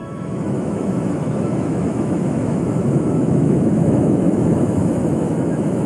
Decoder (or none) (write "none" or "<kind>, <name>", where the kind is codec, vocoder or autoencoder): autoencoder, DAC-VAE